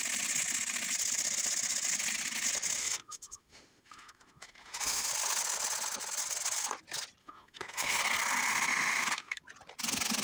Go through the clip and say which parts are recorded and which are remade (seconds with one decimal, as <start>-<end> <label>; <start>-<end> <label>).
0.0-2.8 recorded; 2.8-5.1 remade; 5.1-7.2 recorded; 7.2-8.0 remade; 8.0-8.5 recorded; 8.5-9.4 remade; 9.4-10.2 recorded